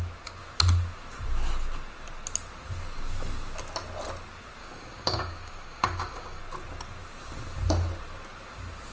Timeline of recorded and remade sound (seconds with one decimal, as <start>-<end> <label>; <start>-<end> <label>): 0.0-4.6 recorded; 4.6-6.4 remade; 6.4-8.9 recorded